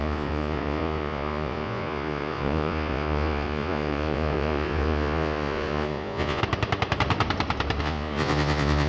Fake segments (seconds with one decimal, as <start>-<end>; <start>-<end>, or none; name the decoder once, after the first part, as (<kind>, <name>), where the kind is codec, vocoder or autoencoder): 0.0-6.4 (vocoder, Vocos); 7.8-8.9